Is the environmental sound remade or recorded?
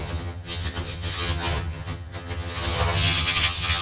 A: remade